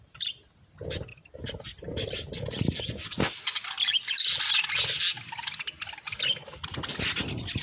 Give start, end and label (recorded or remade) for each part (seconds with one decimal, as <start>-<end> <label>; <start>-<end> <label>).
0.0-7.6 recorded